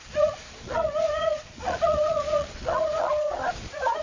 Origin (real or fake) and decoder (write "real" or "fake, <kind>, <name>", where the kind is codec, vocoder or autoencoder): fake, vocoder, Vocos